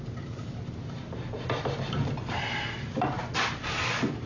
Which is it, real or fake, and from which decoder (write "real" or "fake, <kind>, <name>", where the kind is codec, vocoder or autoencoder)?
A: real